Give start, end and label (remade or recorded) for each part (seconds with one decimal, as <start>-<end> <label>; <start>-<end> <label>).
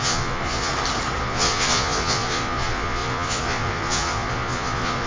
0.0-0.7 remade; 0.7-1.2 recorded; 1.2-5.1 remade